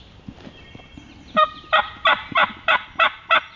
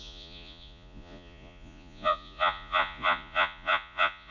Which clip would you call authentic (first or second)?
first